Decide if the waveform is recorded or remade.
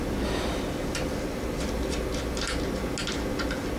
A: recorded